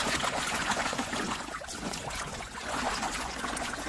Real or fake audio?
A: fake